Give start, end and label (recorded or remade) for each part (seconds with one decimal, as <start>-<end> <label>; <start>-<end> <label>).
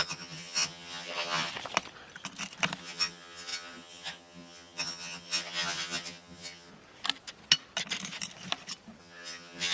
0.0-1.5 remade; 1.5-2.8 recorded; 2.8-6.7 remade; 6.7-9.0 recorded; 9.0-9.7 remade